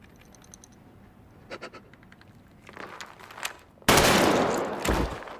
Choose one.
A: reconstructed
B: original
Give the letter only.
B